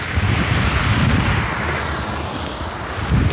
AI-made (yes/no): no